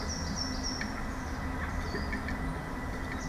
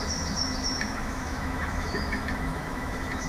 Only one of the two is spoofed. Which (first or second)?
second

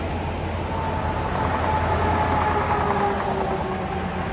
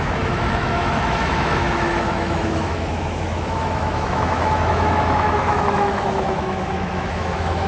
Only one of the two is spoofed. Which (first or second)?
second